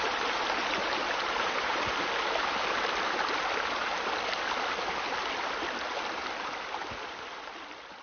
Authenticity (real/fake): real